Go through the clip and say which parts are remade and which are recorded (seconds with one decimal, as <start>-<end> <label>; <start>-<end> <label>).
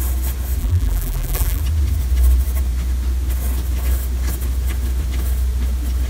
0.0-0.6 recorded; 0.6-1.6 remade; 1.6-6.1 recorded